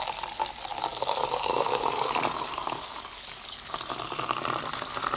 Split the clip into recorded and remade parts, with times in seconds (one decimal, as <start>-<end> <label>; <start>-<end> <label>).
0.0-0.7 recorded; 0.7-3.8 remade; 3.8-5.2 recorded